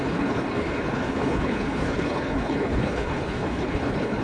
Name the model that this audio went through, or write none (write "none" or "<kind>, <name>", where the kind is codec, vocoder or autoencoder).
codec, HILCodec